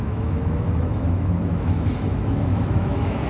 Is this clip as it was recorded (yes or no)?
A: no